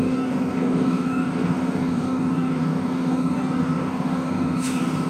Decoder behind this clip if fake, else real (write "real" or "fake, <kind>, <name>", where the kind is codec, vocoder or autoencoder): fake, codec, DAC